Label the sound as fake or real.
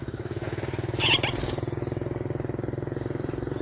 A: real